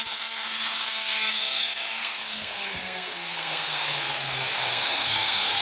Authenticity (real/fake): fake